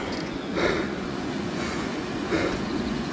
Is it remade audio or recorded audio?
remade